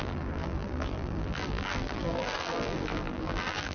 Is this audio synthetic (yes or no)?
yes